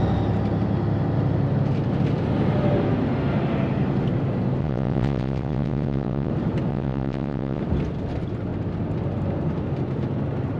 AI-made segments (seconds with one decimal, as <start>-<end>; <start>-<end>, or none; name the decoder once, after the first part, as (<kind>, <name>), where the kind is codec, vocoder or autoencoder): 4.6-6.3 (vocoder, WaveNeXt); 6.7-7.6